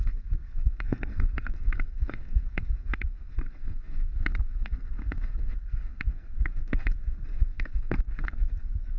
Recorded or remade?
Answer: remade